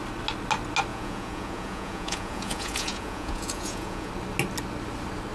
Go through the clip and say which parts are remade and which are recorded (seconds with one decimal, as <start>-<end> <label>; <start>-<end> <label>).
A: 0.0-0.9 recorded; 0.9-4.1 remade; 4.1-5.3 recorded